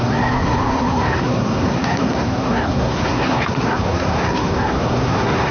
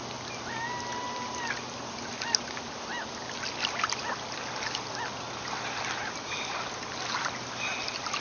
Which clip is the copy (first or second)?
first